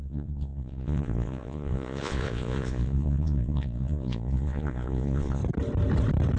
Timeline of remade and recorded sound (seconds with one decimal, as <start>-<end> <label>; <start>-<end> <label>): 0.0-5.4 remade; 5.4-6.4 recorded